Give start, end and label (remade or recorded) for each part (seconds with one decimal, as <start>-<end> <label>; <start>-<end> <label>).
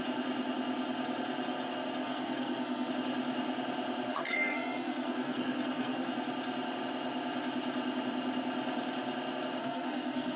0.0-2.0 recorded; 2.0-2.9 remade; 2.9-4.1 recorded; 4.1-6.1 remade; 6.1-9.6 recorded; 9.6-10.4 remade